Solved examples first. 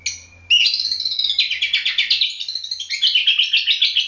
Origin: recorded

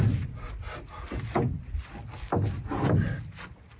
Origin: recorded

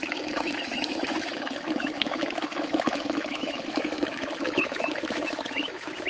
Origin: remade